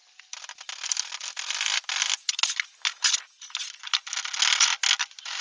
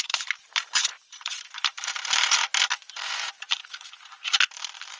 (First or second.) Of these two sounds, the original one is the first